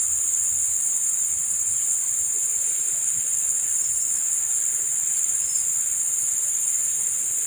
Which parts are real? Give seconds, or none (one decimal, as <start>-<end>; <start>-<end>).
0.0-1.0; 3.0-7.5